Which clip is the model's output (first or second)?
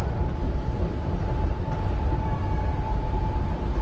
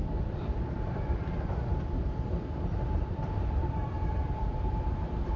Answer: second